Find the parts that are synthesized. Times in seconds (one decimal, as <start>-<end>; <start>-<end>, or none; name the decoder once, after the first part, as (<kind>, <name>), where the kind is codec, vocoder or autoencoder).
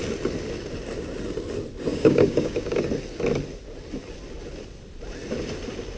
1.9-2.8 (codec, DAC)